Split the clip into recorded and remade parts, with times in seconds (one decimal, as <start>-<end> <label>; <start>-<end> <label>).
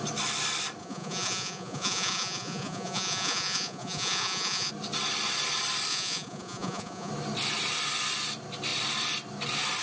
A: 0.0-0.8 recorded; 0.8-4.7 remade; 4.7-5.9 recorded; 5.9-7.1 remade; 7.1-9.8 recorded